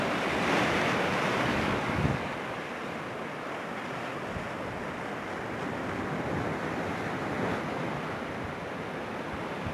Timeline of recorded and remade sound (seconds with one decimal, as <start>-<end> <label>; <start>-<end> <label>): 0.0-1.5 recorded; 1.5-2.3 remade; 2.3-9.7 recorded